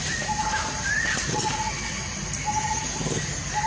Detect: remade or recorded recorded